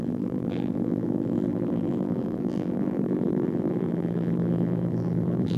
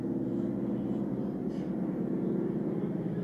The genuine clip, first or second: second